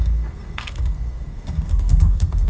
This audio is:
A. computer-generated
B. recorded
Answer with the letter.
A